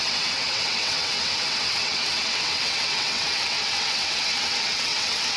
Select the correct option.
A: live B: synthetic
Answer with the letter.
B